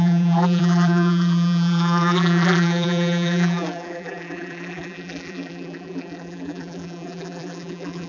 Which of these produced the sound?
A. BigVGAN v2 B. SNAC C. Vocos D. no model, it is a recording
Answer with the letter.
A